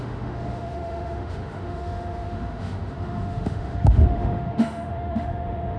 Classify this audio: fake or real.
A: fake